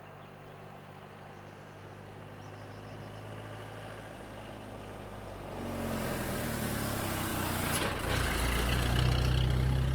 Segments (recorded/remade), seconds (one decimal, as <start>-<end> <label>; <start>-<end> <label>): 0.0-9.9 recorded

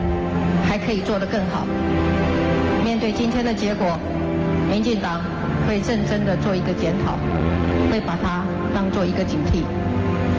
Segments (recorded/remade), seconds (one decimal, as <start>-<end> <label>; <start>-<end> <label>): 0.0-7.3 recorded; 7.3-7.9 remade; 7.9-10.4 recorded

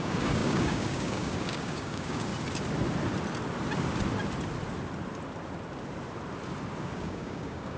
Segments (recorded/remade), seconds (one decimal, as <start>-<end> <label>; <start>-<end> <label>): 0.0-2.3 remade; 2.3-6.8 recorded; 6.8-7.8 remade

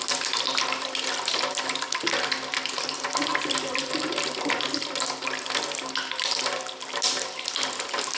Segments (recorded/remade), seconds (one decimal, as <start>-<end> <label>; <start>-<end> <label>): 0.0-8.2 recorded

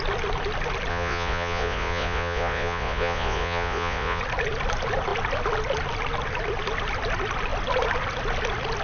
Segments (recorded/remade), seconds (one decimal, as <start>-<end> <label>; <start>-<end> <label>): 0.0-0.9 recorded; 0.9-4.2 remade; 4.2-8.8 recorded

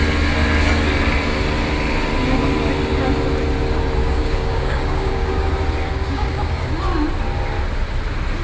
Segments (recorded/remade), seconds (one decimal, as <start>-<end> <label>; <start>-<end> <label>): 0.0-4.0 recorded; 4.0-5.5 remade; 5.5-5.9 recorded; 5.9-6.6 remade; 6.6-8.4 recorded